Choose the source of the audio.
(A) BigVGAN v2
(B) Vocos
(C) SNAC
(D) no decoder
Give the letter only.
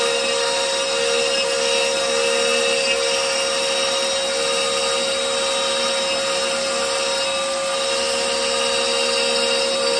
D